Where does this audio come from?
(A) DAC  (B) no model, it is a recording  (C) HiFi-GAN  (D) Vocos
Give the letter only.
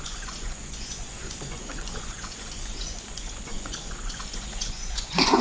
D